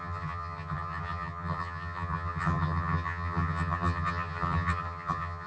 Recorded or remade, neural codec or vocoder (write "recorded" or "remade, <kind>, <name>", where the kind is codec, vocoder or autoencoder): remade, vocoder, HiFi-GAN